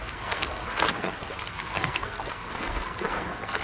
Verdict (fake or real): fake